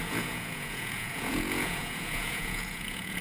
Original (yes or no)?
no